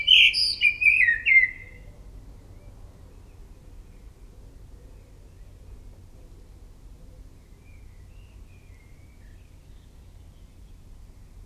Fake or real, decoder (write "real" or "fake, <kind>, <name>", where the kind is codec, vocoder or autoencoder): real